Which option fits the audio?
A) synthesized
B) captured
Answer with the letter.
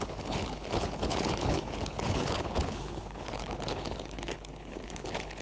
A